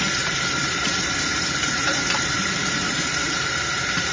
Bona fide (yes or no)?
no